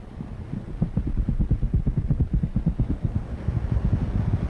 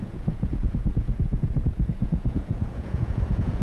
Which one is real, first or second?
first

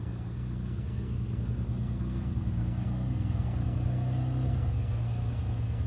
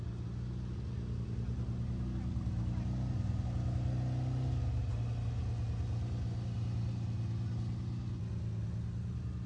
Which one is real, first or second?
second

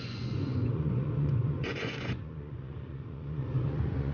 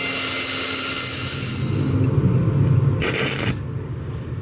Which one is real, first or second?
second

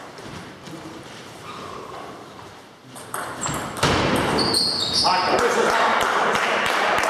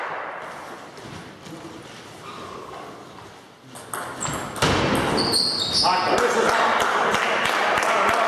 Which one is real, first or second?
second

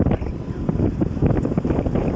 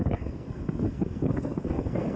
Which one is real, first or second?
first